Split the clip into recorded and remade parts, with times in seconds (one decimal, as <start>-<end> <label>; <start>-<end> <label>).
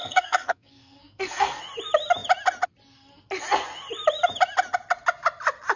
0.0-1.6 remade; 1.6-5.8 recorded